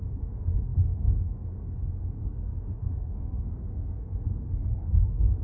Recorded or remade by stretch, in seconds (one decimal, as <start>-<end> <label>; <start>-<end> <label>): 0.0-5.4 remade